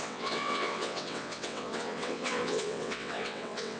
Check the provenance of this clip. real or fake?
fake